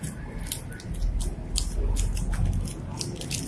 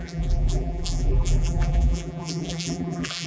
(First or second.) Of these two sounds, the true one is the first